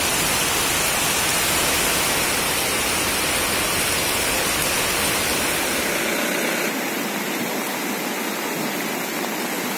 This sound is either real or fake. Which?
real